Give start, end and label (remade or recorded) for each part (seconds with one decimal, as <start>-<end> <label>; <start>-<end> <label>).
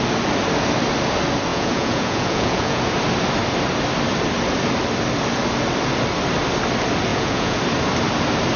0.0-1.5 recorded; 1.5-2.9 remade; 2.9-7.1 recorded; 7.1-7.6 remade; 7.6-8.6 recorded